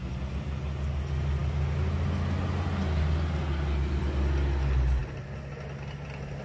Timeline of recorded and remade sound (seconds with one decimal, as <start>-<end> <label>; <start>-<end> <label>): 0.0-6.4 recorded